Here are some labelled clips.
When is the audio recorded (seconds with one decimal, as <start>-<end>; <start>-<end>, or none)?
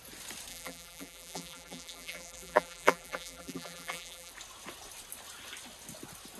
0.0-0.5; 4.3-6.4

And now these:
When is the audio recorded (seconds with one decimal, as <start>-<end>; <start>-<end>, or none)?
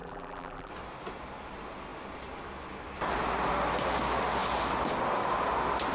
0.7-5.9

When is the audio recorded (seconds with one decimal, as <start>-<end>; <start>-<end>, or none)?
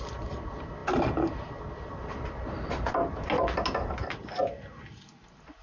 0.0-5.6